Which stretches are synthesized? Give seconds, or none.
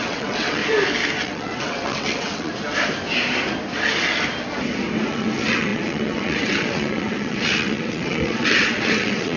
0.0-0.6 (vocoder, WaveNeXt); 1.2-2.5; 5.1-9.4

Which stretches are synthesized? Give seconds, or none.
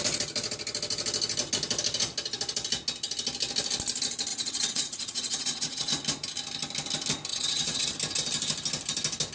4.3-5.9 (vocoder, WaveNeXt); 7.3-7.9